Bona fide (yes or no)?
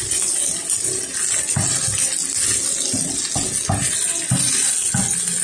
yes